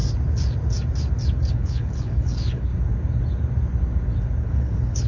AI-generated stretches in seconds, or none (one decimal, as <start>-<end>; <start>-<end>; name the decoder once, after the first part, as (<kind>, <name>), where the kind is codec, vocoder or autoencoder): 1.5-2.7 (codec, HILCodec); 4.4-5.1